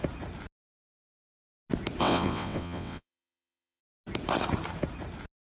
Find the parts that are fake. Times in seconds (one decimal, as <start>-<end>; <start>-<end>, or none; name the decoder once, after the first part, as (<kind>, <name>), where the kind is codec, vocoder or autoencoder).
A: 2.0-3.8 (vocoder, WaveNeXt)